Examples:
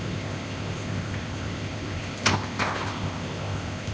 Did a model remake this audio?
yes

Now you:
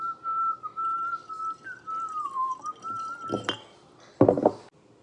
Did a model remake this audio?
no